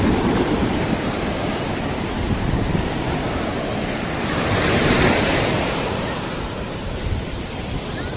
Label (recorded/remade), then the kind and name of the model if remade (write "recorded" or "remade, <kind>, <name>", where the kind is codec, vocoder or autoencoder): remade, vocoder, BigVGAN v2